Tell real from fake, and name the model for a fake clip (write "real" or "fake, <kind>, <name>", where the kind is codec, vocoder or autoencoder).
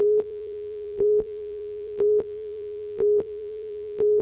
fake, vocoder, BigVGAN v2